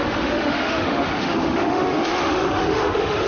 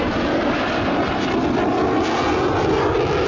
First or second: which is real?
second